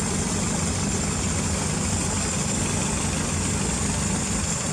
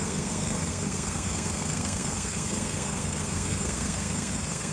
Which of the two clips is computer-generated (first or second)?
second